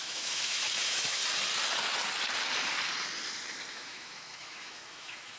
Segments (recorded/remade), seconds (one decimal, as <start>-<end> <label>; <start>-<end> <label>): 0.0-1.2 remade; 1.2-3.7 recorded; 3.7-5.4 remade